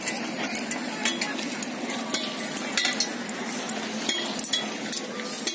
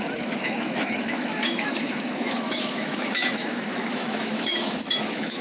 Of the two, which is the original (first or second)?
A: first